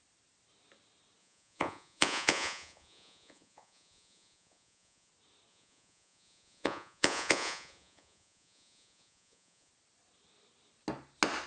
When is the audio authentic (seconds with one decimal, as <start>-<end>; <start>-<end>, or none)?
0.0-1.2; 5.1-5.5; 9.7-11.5